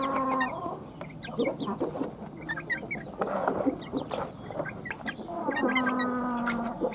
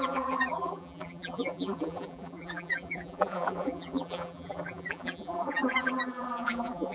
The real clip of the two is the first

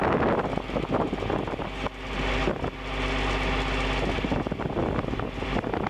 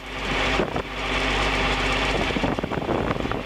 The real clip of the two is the first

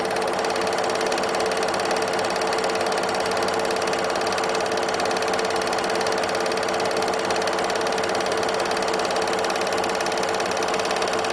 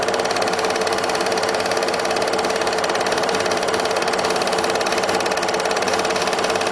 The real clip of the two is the first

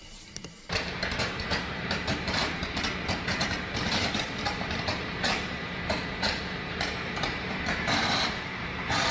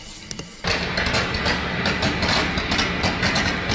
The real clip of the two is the second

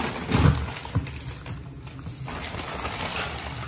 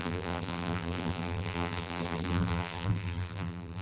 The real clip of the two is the first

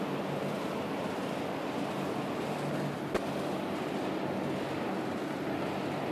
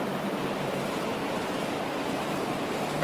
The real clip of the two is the first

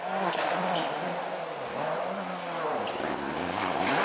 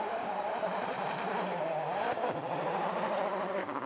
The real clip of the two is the first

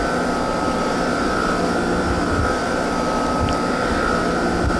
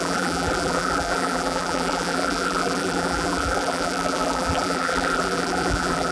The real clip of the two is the first